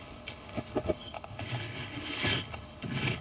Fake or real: fake